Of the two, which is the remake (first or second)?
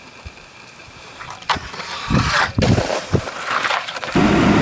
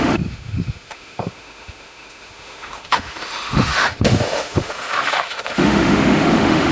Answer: second